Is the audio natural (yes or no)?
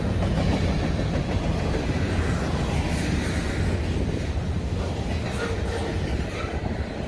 yes